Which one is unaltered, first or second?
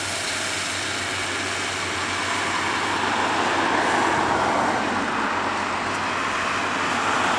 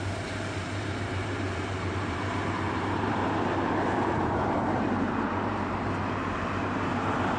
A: first